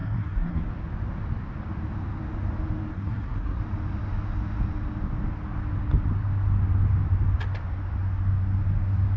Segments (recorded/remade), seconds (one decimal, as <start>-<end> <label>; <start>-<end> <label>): 0.0-0.7 remade; 0.7-2.9 recorded; 2.9-3.6 remade; 3.6-9.2 recorded